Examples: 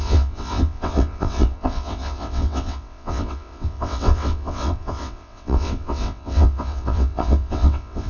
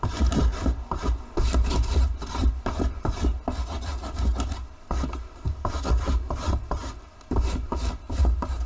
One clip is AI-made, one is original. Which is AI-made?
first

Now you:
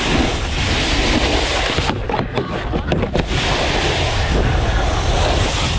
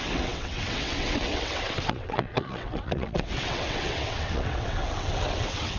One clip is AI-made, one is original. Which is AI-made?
second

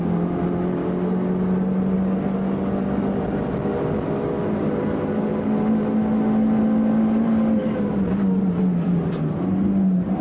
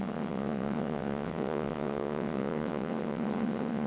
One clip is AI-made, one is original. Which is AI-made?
second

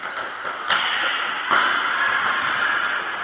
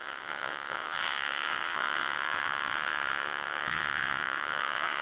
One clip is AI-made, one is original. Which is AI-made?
second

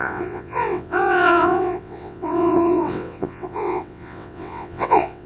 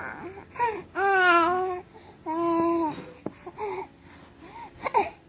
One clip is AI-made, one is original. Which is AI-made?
first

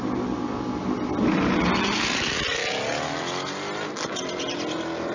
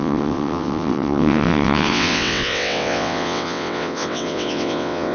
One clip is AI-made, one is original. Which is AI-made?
second